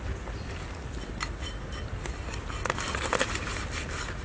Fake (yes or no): no